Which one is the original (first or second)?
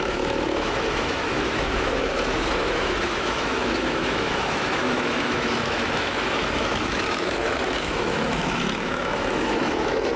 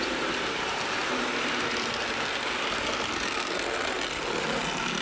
second